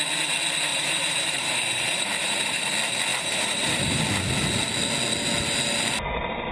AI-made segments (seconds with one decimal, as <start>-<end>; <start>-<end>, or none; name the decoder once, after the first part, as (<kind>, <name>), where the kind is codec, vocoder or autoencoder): 0.7-2.7 (vocoder, BigVGAN v2); 3.1-4.0